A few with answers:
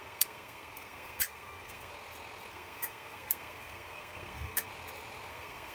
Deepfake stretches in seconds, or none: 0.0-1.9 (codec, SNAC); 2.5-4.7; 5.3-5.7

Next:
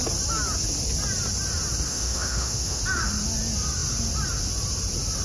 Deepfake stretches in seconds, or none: 1.9-2.8 (autoencoder, DAC-VAE)